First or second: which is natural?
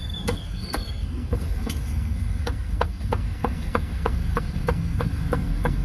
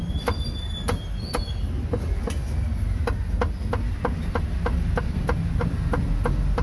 second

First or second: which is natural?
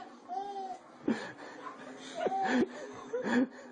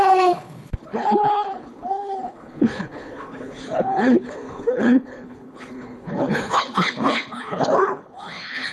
first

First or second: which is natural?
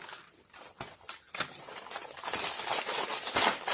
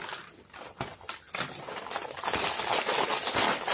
second